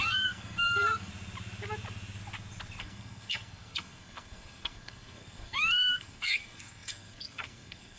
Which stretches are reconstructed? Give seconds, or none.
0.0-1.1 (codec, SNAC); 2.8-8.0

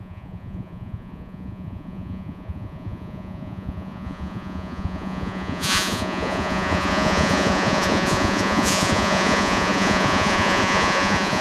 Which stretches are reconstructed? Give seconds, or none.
0.0-11.4 (vocoder, Vocos)